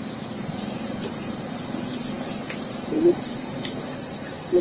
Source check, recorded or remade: recorded